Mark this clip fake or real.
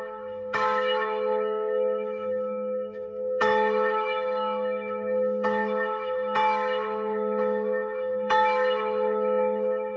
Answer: fake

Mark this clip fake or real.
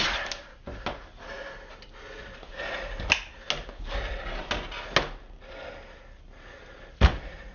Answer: real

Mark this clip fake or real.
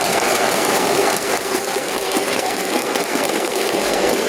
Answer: fake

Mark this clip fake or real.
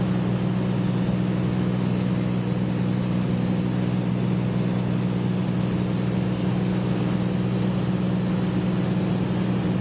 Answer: real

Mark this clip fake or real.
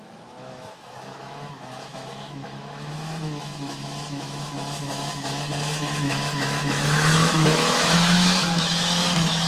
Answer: fake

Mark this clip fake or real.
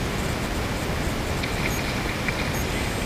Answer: real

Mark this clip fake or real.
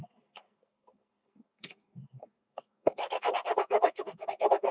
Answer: fake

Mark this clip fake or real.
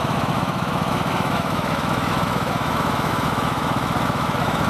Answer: fake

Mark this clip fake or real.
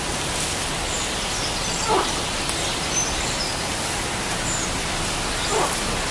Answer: real